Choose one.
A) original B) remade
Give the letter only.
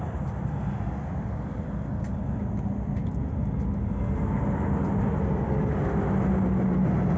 A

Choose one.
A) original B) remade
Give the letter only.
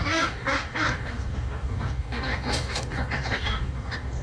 B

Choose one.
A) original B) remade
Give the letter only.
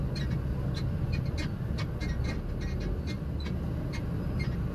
A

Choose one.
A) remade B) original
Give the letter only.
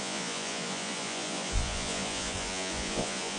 A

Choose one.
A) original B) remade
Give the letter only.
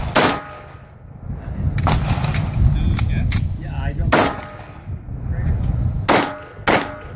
A